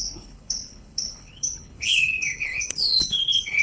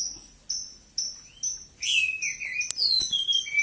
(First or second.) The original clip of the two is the second